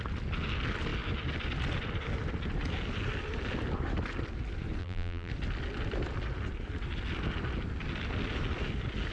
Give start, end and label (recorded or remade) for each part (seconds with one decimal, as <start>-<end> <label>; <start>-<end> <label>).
0.0-4.8 recorded; 4.8-5.3 remade; 5.3-9.1 recorded